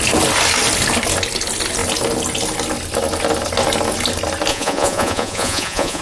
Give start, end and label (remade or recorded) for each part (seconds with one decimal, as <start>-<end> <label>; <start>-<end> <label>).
0.0-4.5 recorded; 4.5-6.0 remade